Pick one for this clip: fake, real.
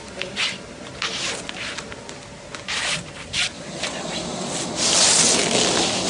real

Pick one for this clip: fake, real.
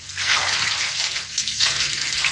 fake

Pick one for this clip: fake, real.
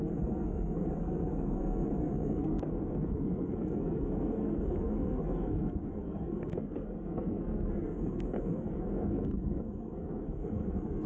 fake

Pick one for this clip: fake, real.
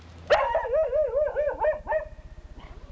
real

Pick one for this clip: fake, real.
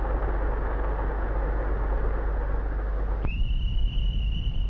real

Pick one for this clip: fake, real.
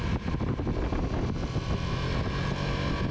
real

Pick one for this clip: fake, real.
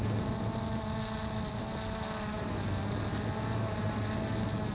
real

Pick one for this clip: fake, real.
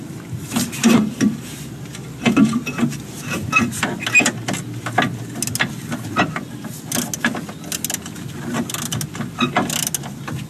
real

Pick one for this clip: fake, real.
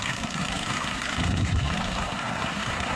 fake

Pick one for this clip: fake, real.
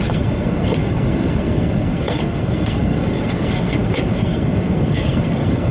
fake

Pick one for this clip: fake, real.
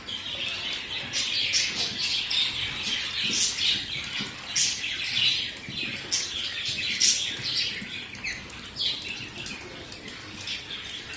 real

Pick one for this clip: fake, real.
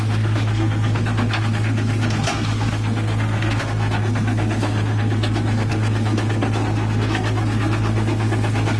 fake